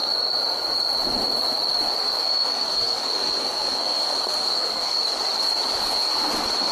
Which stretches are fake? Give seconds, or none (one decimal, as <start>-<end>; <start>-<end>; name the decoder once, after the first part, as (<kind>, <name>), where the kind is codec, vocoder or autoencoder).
2.0-5.0 (codec, SNAC); 5.8-6.3